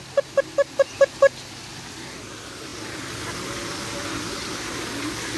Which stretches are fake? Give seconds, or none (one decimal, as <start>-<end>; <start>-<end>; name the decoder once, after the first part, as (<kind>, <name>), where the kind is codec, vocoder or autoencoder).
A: none